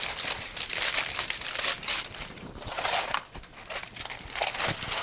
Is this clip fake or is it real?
real